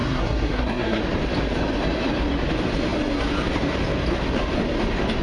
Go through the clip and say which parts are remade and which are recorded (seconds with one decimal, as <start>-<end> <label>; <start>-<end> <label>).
0.0-1.0 remade; 1.0-5.2 recorded